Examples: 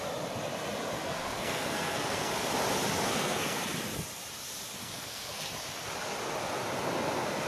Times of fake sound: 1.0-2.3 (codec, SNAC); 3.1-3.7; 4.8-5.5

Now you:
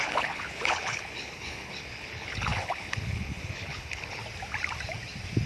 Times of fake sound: 0.0-4.2 (codec, HILCodec)

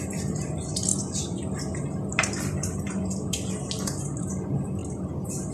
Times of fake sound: 0.0-5.5 (vocoder, BigVGAN v2)

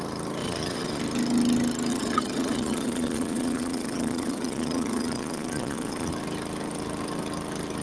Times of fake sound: 0.4-1.0 (vocoder, Vocos); 1.9-6.1

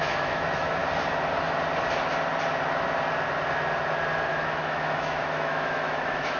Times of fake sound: 0.0-0.8 (autoencoder, DAC-VAE); 4.3-6.4

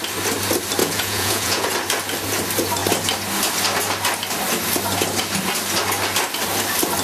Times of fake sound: 0.8-1.7 (vocoder, Vocos)

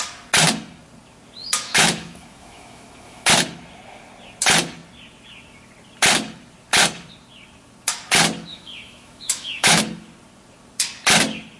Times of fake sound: 1.4-3.3 (autoencoder, DAC-VAE); 8.5-9.8

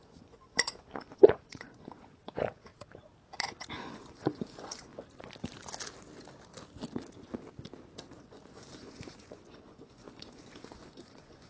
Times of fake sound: 0.0-2.7 (vocoder, Vocos); 3.7-4.9; 8.2-11.5